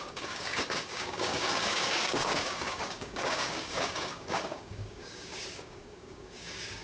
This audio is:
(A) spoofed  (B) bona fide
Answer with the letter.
A